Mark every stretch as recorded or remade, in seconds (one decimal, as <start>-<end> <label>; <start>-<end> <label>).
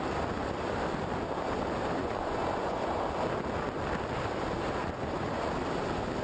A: 0.0-2.0 recorded; 2.0-3.0 remade; 3.0-4.8 recorded; 4.8-5.5 remade; 5.5-6.2 recorded